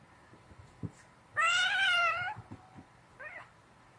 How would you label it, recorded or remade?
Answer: remade